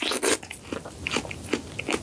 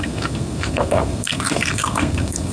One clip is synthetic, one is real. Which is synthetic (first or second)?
second